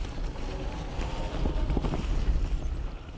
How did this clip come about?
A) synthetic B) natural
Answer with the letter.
B